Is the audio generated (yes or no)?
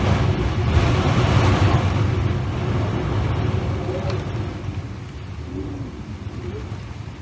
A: no